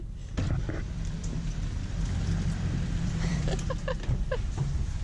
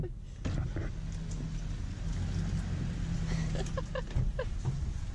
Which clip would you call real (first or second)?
second